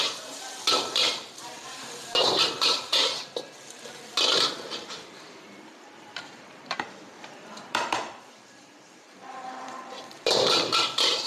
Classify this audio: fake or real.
fake